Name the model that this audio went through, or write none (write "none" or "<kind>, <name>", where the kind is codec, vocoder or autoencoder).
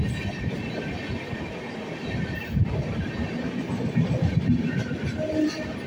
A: vocoder, BigVGAN v2